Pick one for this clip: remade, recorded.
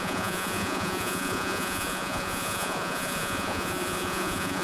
remade